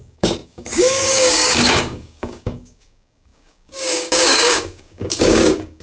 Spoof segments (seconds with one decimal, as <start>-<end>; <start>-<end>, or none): 0.0-5.8